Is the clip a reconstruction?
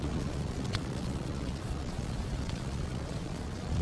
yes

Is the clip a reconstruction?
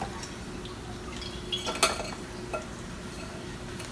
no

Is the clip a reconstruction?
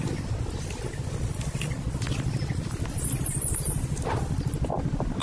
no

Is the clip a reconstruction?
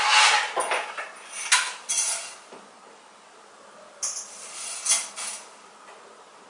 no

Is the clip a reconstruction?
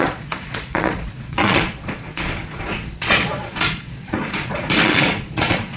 yes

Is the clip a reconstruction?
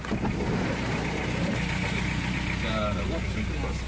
no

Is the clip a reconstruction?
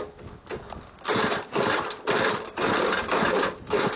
no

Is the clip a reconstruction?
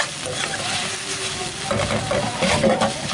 no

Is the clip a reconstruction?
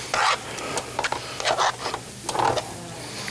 no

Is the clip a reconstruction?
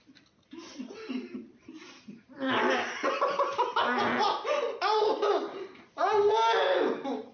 no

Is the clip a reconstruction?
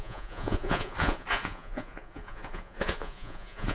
yes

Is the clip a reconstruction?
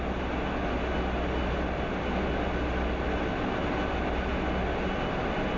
no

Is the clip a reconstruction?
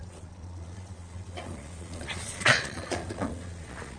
yes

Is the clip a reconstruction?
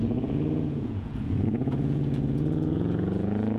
yes